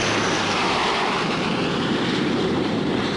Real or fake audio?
fake